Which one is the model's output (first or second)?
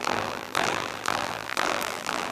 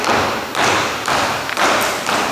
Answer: first